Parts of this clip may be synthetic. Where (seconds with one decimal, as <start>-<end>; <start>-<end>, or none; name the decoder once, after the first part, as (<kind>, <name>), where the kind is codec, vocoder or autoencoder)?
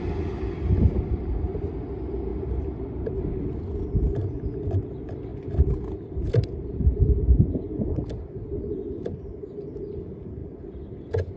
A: 2.3-4.8 (vocoder, BigVGAN v2); 5.3-9.2